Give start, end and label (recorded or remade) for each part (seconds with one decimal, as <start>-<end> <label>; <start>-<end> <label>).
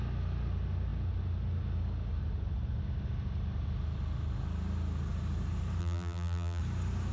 0.0-5.8 recorded; 5.8-6.6 remade; 6.6-7.1 recorded